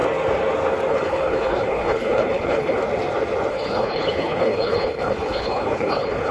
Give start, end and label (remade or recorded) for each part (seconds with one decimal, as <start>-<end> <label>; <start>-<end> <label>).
0.0-0.9 recorded; 0.9-2.8 remade; 2.8-3.5 recorded; 3.5-6.3 remade